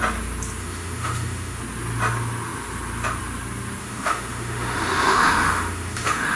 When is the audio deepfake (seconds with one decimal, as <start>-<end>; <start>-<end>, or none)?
0.6-1.6; 3.8-6.4